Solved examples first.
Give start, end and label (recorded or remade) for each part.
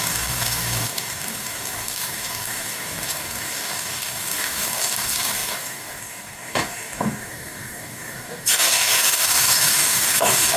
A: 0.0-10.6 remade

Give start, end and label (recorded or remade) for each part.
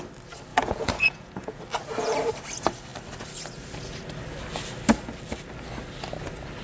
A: 0.0-0.5 recorded; 0.5-1.6 remade; 1.6-6.6 recorded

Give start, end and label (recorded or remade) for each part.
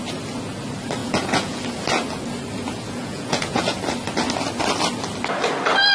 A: 0.0-1.0 recorded; 1.0-1.6 remade; 1.6-3.0 recorded; 3.0-3.8 remade; 3.8-5.9 recorded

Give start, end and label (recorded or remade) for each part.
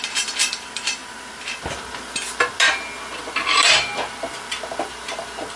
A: 0.0-5.6 recorded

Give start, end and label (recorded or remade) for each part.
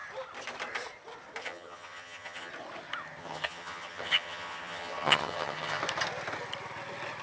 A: 0.0-1.4 recorded; 1.4-2.5 remade; 2.5-3.2 recorded; 3.2-5.8 remade; 5.8-7.2 recorded